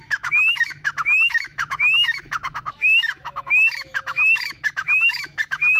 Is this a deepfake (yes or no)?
yes